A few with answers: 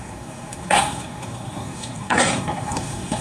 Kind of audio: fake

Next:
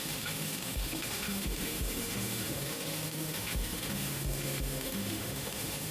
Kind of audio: fake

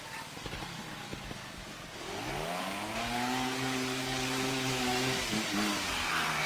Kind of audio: fake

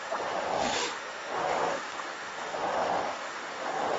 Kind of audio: fake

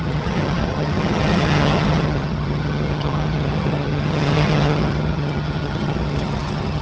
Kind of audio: fake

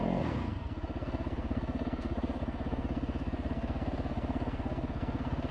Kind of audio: fake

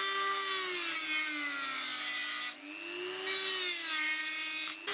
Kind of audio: real